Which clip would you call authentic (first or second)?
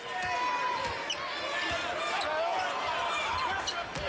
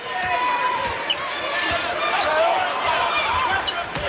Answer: first